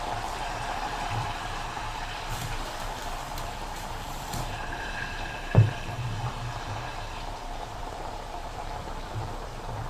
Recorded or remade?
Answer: remade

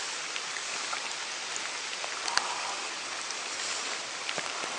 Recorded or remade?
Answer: remade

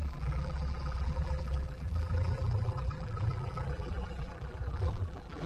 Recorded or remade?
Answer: remade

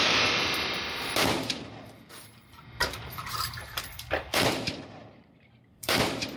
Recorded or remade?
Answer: remade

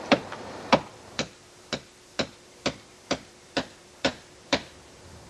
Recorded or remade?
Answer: remade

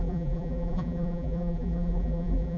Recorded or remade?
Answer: remade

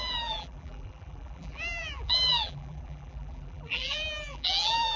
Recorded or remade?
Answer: remade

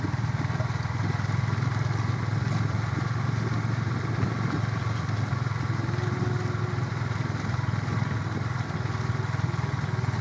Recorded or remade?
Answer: recorded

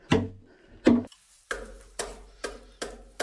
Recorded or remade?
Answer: recorded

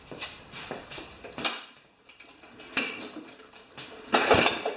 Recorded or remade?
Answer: remade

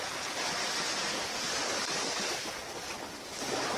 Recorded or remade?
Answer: recorded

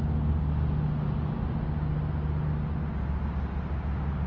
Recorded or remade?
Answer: recorded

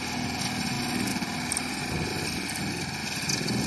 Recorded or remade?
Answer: recorded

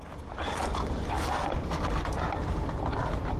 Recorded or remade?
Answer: recorded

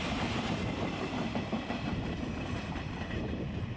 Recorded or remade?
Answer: remade